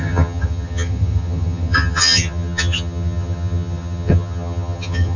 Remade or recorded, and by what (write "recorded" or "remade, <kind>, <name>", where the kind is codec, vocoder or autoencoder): remade, vocoder, HiFi-GAN